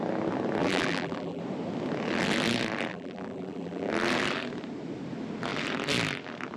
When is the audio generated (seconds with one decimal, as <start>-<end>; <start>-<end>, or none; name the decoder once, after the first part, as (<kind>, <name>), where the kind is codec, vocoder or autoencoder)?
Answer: 0.6-1.4 (vocoder, BigVGAN v2); 2.9-3.9